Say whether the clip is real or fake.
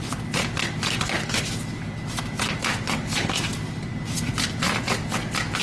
real